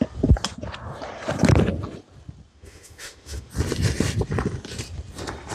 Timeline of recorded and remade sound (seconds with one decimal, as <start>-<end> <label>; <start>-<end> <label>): 0.0-2.5 recorded; 2.5-3.5 remade; 3.5-5.5 recorded